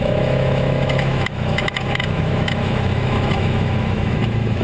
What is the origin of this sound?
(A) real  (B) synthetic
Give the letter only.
B